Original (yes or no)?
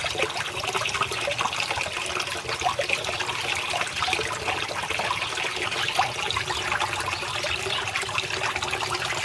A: yes